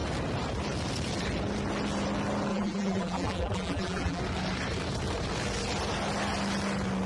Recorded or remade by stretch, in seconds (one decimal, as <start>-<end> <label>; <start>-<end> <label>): 0.0-2.5 recorded; 2.5-4.2 remade; 4.2-7.1 recorded